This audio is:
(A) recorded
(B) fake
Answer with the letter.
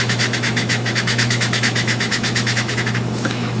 B